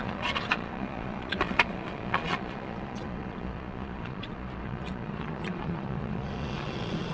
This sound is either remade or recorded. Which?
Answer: remade